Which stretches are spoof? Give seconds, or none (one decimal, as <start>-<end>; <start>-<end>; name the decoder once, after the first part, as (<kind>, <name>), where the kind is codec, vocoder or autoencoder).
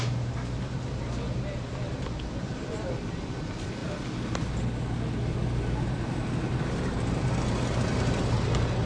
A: none